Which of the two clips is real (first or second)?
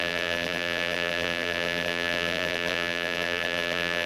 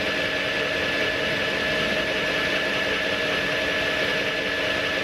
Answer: second